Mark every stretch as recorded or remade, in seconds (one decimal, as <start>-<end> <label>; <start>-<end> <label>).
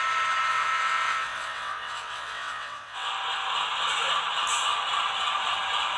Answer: 0.0-0.5 recorded; 0.5-3.1 remade; 3.1-6.0 recorded